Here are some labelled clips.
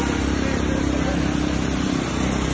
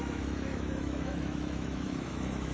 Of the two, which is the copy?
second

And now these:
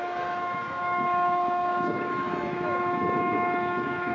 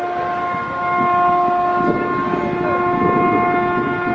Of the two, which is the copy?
first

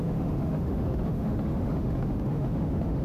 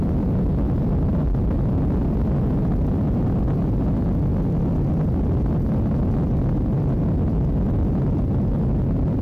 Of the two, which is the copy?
first